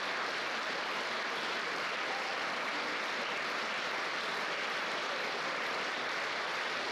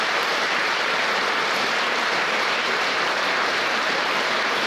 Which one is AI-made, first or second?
second